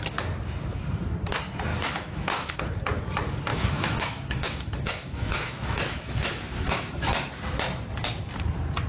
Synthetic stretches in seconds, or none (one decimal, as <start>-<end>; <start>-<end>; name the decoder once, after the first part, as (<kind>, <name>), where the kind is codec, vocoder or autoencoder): 1.7-2.6 (autoencoder, DAC-VAE); 3.5-7.1